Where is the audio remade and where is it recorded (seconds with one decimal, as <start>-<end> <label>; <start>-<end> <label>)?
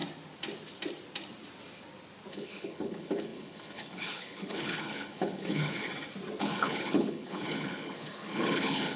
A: 0.0-2.3 recorded; 2.3-5.9 remade; 5.9-6.4 recorded; 6.4-9.0 remade